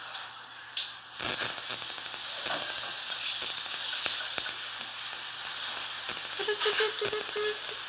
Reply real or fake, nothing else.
real